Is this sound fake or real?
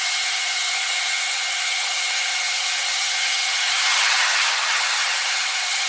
fake